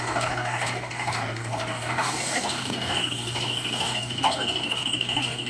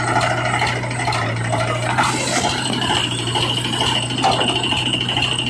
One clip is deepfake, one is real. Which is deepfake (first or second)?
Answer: first